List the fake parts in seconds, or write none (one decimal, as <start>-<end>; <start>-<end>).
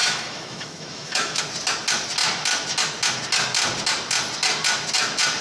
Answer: 0.0-1.4